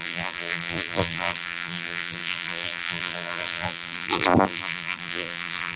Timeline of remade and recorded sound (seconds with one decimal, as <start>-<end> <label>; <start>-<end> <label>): 0.0-5.8 remade